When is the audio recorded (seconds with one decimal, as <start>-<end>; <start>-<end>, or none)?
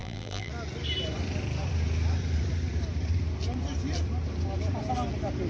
0.5-5.5